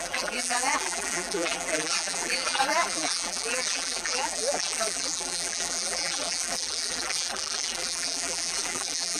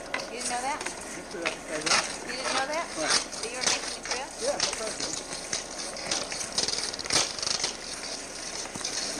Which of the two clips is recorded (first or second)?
second